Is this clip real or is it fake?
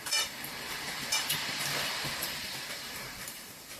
fake